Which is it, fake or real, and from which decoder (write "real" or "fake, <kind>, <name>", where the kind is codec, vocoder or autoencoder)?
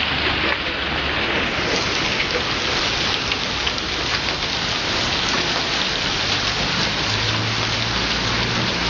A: real